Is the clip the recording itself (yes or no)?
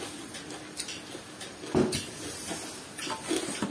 yes